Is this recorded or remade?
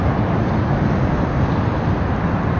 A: recorded